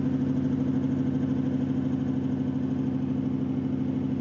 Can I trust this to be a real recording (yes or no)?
yes